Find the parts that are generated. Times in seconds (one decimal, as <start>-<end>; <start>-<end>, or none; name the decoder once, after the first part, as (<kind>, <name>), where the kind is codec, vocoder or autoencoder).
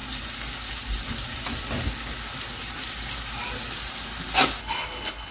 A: 4.6-5.3 (codec, HILCodec)